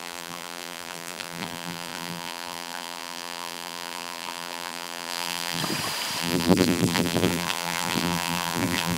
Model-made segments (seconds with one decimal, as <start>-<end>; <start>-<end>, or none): 0.0-5.6; 6.2-9.0